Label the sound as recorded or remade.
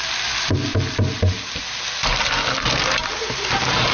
recorded